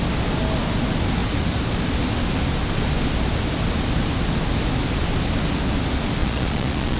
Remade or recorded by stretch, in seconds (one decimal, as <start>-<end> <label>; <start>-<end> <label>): 0.0-6.2 recorded; 6.2-7.0 remade